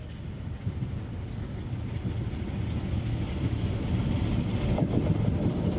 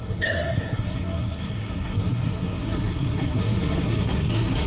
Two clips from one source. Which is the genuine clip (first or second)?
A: first